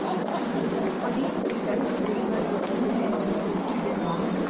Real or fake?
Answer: real